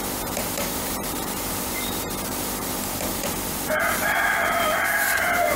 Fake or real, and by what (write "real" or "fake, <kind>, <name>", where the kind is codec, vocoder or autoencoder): fake, vocoder, BigVGAN v2